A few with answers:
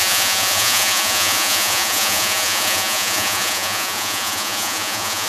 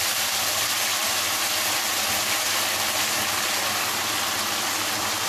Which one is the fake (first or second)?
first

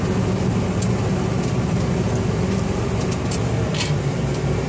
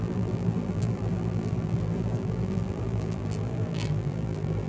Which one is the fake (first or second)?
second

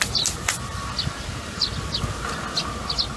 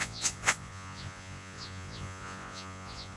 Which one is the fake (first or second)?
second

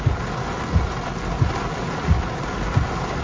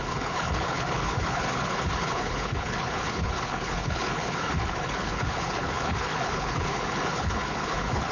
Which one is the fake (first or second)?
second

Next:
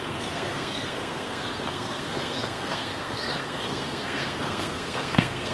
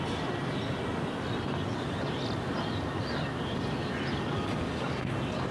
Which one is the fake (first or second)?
first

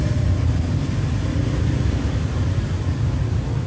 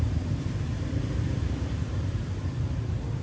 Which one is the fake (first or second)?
second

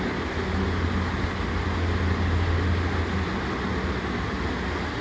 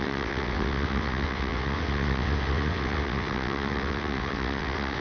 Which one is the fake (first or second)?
second